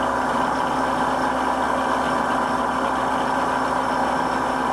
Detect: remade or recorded recorded